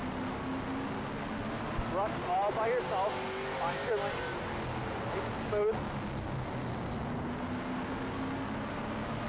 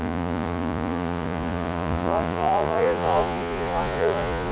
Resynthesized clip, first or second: second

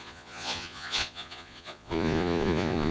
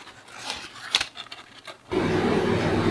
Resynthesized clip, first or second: first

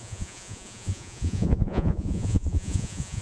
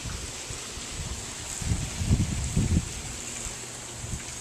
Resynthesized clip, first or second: first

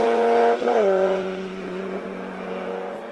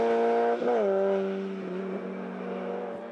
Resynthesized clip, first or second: first